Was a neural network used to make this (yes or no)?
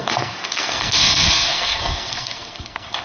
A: yes